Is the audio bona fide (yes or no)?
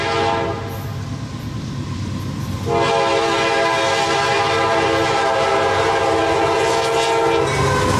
yes